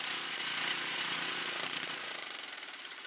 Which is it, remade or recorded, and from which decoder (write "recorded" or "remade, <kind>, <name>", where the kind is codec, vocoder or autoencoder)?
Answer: remade, vocoder, Vocos